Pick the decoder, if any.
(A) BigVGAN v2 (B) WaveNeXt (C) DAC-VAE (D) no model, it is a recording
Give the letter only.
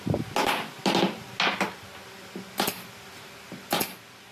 D